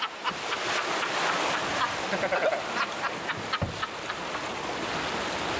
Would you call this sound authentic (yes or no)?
yes